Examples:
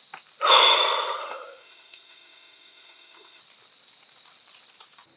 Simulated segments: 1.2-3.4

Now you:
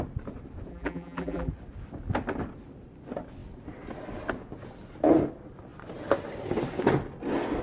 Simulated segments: 0.7-1.5

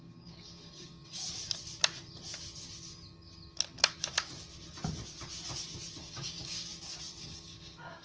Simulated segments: 0.0-1.2; 6.0-6.7; 7.2-8.0

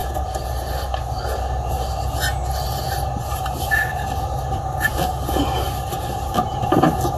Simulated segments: none

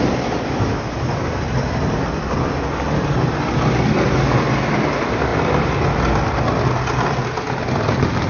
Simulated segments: none